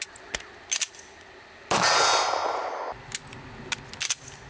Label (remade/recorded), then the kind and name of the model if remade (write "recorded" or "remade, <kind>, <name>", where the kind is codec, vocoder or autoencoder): recorded